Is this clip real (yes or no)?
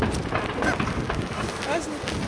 yes